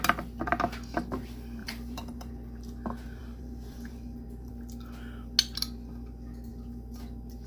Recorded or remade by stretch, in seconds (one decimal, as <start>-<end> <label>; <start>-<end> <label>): 0.0-1.6 recorded; 1.6-2.3 remade; 2.3-3.2 recorded; 3.2-4.5 remade; 4.5-7.5 recorded